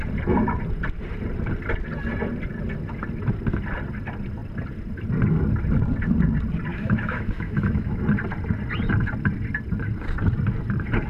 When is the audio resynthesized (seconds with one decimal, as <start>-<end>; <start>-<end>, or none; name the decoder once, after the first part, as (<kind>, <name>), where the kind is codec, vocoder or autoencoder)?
6.7-8.0 (autoencoder, DAC-VAE)